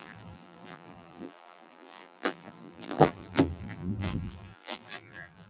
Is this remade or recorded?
remade